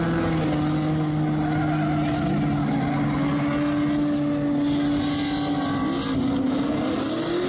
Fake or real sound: real